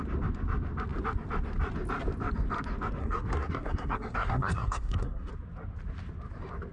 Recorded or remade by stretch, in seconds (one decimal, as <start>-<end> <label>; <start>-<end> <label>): 0.0-3.0 recorded; 3.0-5.3 remade; 5.3-6.7 recorded